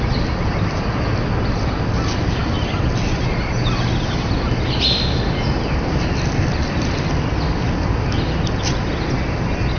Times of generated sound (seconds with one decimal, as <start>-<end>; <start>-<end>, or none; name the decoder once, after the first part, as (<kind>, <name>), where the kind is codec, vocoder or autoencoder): none